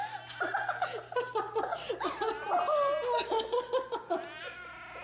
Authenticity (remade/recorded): recorded